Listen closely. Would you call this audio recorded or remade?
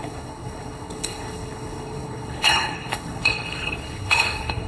remade